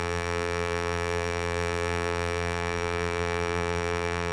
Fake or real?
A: fake